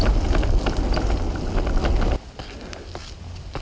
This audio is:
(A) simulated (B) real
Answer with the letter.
B